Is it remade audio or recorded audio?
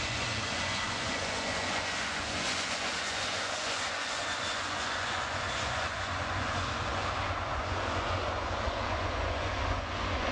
remade